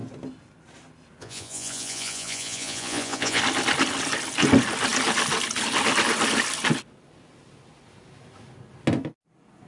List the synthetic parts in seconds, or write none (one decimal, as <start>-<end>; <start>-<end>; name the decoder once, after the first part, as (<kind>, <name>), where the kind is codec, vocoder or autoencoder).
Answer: 1.2-3.4 (vocoder, Vocos)